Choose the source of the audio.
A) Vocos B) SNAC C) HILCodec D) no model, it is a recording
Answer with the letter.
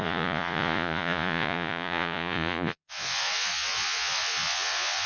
A